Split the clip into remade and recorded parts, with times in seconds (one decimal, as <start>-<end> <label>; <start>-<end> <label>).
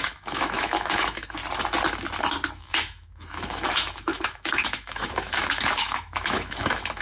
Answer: 0.0-1.4 remade; 1.4-2.5 recorded; 2.5-7.0 remade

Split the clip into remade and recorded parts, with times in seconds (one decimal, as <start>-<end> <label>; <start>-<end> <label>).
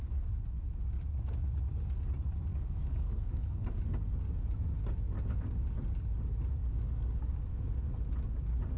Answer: 0.0-2.5 recorded; 2.5-3.8 remade; 3.8-6.6 recorded; 6.6-7.2 remade; 7.2-8.8 recorded